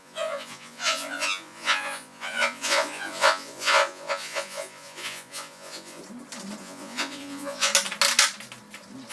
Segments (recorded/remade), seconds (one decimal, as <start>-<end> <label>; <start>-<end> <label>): 0.0-6.0 remade; 6.0-6.6 recorded; 6.6-7.7 remade; 7.7-9.1 recorded